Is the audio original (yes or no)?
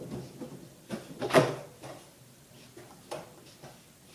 yes